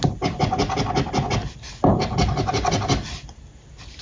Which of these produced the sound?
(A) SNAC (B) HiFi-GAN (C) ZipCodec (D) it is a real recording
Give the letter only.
D